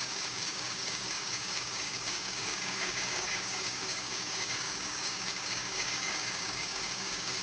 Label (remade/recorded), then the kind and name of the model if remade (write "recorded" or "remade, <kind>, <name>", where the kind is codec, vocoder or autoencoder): remade, codec, DAC